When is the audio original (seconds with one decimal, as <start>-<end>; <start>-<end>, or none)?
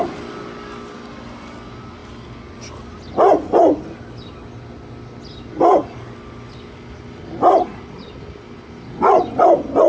0.0-9.9